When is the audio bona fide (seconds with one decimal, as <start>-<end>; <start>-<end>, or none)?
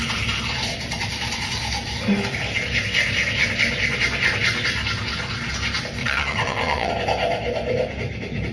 0.0-6.0; 6.9-8.5